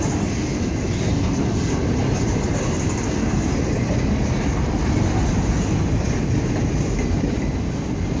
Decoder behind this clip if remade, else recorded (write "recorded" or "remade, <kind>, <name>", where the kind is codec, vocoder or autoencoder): recorded